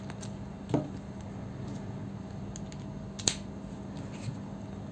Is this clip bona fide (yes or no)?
yes